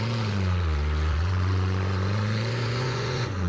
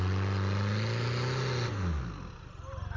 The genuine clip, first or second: second